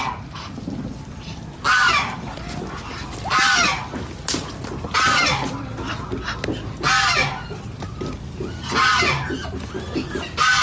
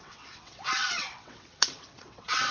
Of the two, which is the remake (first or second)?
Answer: second